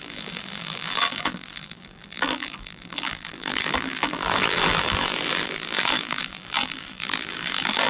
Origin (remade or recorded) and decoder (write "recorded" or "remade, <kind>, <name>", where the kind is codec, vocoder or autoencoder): remade, vocoder, BigVGAN v2